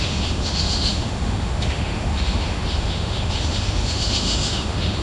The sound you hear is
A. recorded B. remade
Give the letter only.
B